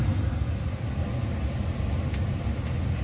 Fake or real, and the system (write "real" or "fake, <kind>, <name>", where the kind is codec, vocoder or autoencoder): real